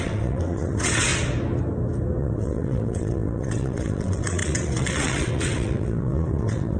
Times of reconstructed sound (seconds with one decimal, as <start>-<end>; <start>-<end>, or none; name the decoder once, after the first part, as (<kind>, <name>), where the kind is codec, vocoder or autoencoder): 0.0-1.1 (vocoder, WaveNeXt); 2.2-6.8